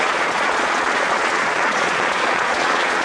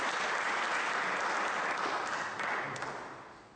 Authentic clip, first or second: second